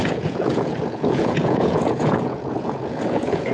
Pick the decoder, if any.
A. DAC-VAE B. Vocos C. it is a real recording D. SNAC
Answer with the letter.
B